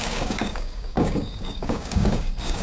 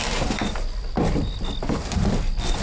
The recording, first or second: second